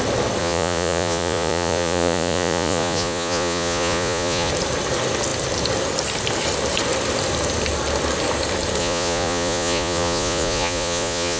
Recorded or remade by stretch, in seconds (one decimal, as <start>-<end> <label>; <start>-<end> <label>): 0.0-0.4 recorded; 0.4-4.5 remade; 4.5-8.8 recorded; 8.8-11.4 remade